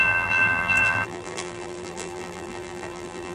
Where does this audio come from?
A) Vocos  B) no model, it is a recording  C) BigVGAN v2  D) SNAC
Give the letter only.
C